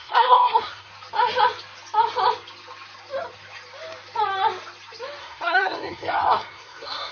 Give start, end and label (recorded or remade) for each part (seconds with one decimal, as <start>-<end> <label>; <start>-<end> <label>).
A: 0.0-0.9 remade; 0.9-5.2 recorded; 5.2-7.1 remade